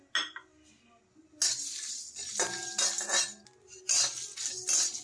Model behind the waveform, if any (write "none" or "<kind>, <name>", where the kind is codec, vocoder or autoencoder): none